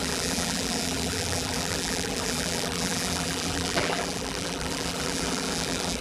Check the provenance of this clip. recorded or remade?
remade